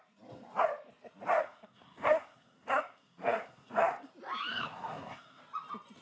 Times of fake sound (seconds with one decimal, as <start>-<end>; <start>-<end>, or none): 1.4-4.1; 4.5-5.4